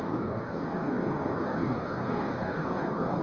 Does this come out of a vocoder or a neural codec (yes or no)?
yes